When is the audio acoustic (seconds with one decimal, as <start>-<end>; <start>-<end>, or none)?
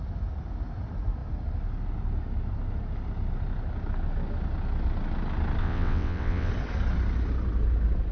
0.0-5.6; 6.5-8.1